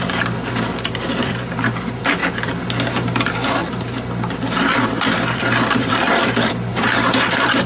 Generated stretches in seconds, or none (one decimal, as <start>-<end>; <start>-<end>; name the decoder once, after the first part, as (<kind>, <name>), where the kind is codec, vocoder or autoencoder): 0.0-2.2 (vocoder, BigVGAN v2); 4.8-6.7; 7.2-7.7